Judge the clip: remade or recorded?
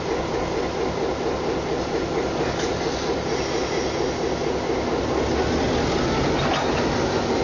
recorded